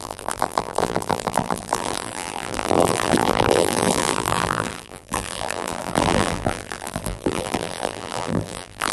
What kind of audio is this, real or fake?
fake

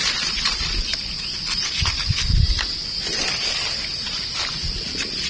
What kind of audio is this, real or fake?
real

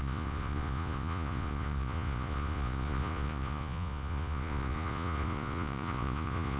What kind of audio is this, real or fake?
fake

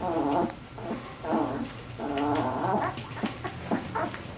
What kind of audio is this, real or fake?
real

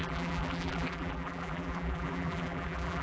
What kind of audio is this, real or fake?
fake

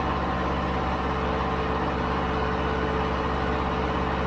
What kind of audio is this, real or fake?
real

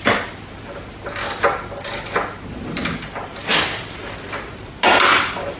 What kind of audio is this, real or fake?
real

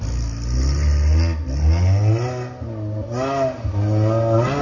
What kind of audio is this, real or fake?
real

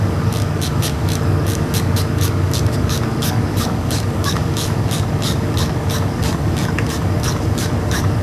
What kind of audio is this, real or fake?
fake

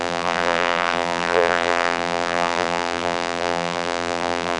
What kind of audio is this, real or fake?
fake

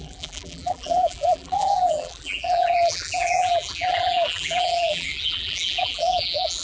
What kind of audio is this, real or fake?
fake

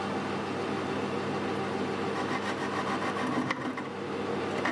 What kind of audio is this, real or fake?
real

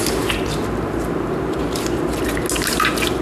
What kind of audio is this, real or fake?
real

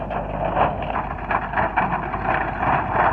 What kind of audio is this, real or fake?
real